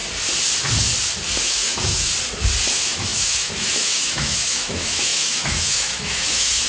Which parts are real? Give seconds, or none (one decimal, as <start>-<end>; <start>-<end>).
0.0-1.4; 2.1-2.7